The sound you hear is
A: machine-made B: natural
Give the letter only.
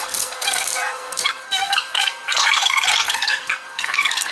A